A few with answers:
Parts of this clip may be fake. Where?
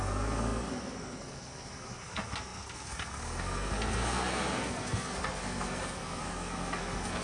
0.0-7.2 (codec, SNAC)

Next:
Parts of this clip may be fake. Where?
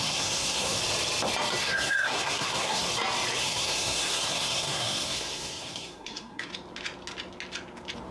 0.0-0.8 (codec, SNAC); 1.6-2.9; 3.4-6.5